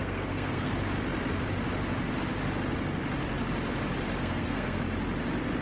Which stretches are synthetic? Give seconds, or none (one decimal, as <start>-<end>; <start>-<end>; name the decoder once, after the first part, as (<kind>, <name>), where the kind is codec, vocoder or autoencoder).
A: 0.0-0.7 (codec, SNAC); 4.2-4.8